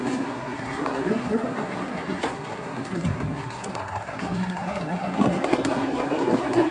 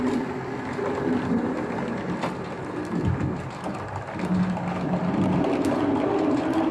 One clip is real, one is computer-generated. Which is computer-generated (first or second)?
first